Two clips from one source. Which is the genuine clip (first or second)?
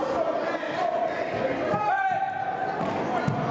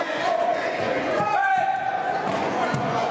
first